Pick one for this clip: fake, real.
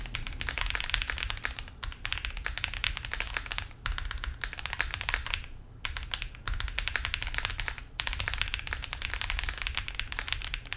fake